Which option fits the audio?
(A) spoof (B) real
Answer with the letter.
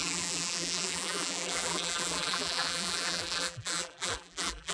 A